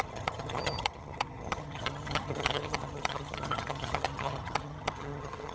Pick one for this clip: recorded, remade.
remade